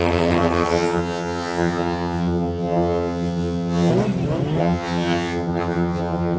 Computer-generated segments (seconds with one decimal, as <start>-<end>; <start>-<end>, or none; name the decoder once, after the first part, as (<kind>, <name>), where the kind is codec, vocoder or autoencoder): 0.0-3.9 (vocoder, HiFi-GAN); 4.6-6.4